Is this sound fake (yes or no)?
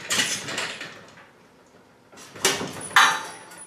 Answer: no